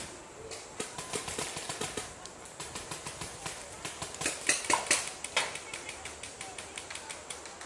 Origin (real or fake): real